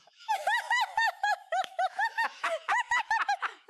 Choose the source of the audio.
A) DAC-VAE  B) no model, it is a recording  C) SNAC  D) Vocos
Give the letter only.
A